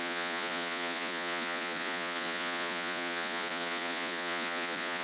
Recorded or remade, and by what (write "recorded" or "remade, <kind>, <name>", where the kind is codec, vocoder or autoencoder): remade, vocoder, Vocos